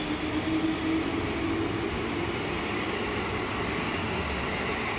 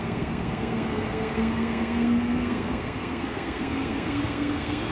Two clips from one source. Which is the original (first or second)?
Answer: first